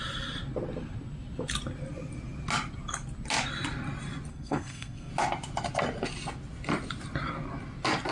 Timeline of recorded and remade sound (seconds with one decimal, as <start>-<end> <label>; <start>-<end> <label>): 0.0-4.3 recorded; 4.3-5.1 remade; 5.1-8.1 recorded